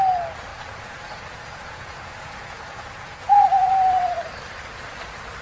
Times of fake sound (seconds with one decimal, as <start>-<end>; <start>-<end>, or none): 0.5-3.7